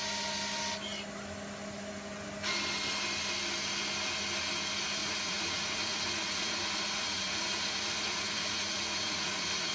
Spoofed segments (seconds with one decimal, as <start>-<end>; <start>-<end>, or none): 5.0-9.7